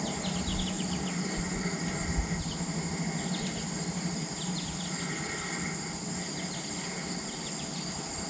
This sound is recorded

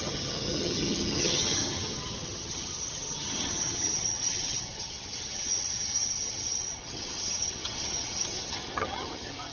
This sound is remade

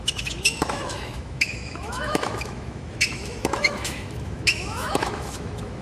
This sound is remade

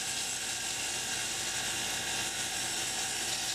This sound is recorded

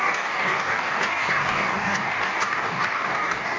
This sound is remade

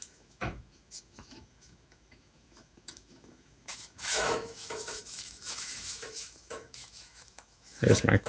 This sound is remade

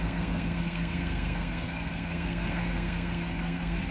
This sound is remade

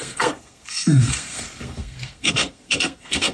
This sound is remade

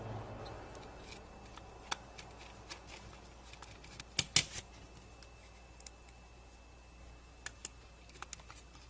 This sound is recorded